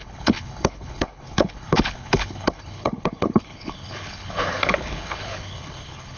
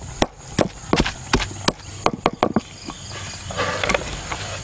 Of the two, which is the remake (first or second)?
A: first